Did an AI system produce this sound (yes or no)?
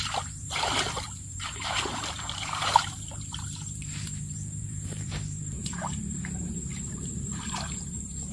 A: yes